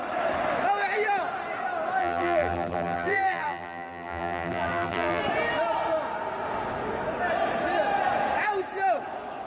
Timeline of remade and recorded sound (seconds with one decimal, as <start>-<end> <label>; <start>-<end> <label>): 0.0-2.0 recorded; 2.0-5.2 remade; 5.2-9.5 recorded